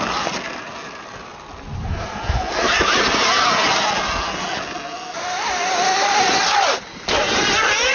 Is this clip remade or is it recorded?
recorded